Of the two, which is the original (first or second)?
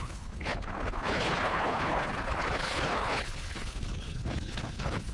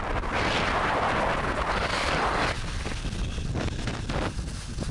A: second